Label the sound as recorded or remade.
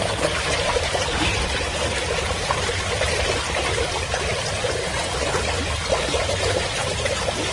recorded